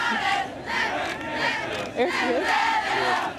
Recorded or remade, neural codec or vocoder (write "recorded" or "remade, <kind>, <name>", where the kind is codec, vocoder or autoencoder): recorded